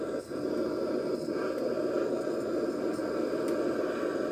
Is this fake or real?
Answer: real